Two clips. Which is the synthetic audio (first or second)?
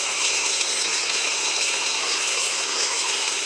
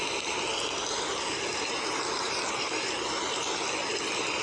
first